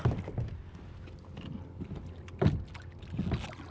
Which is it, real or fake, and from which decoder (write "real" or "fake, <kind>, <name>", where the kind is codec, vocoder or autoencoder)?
real